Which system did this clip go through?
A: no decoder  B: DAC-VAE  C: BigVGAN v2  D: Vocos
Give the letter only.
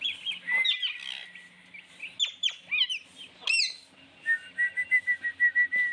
A